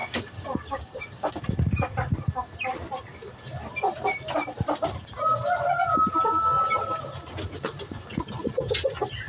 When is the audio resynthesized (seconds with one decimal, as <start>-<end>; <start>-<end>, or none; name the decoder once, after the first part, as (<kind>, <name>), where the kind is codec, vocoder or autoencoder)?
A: 0.0-1.3 (codec, DAC)